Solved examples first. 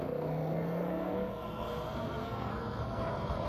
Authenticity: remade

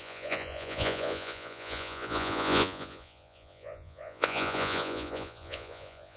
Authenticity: remade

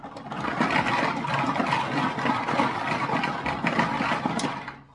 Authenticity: recorded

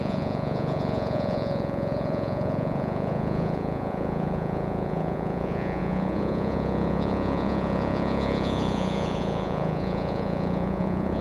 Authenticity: remade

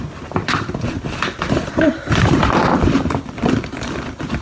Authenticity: remade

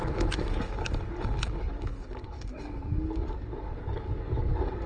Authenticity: remade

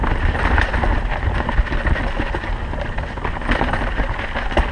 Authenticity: recorded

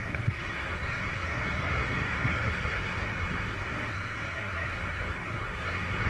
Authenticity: remade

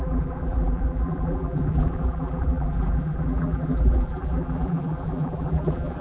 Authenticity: remade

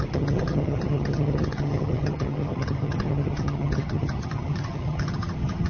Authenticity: remade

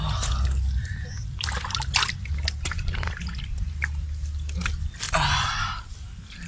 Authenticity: recorded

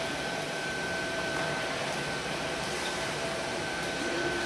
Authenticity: remade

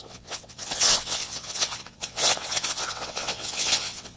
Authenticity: remade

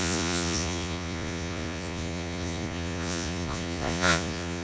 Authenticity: remade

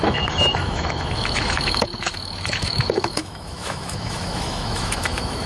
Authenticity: remade